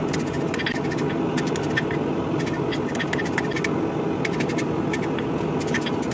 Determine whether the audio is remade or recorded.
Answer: recorded